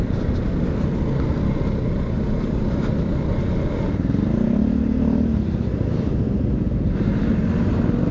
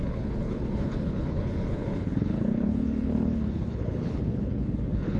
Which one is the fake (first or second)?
second